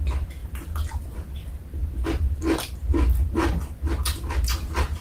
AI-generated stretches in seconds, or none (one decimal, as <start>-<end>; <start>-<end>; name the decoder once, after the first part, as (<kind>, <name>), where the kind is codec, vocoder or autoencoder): none